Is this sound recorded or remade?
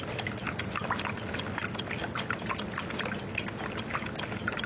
recorded